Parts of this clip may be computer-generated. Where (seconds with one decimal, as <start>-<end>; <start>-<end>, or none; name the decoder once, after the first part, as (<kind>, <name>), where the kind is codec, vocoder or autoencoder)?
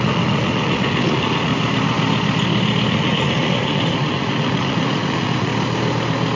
0.0-1.5 (vocoder, Vocos); 2.9-5.5